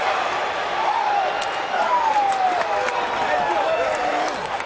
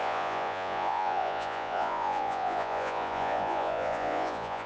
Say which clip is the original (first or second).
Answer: first